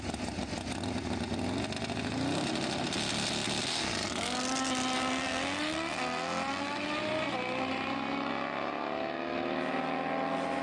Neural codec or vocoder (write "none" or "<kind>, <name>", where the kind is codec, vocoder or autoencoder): none